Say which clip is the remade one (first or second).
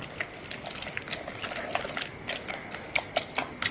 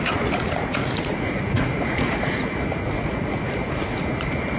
second